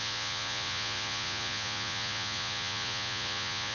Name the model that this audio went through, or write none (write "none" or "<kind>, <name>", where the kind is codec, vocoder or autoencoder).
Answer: vocoder, Vocos